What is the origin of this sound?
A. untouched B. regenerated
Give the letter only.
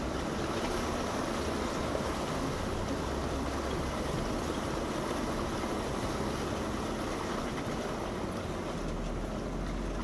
A